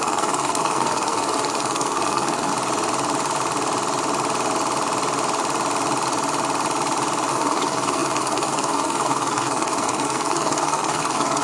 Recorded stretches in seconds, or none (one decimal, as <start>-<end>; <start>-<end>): 2.5-7.3